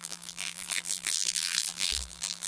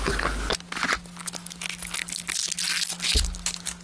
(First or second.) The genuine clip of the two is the second